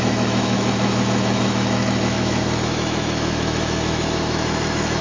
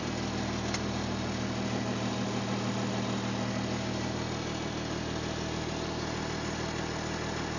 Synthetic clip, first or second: first